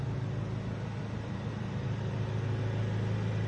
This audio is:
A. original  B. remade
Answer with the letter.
A